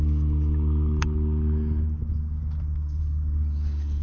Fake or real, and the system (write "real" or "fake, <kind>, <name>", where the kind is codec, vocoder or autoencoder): real